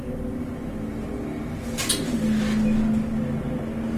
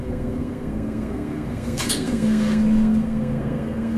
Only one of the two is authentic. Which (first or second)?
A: first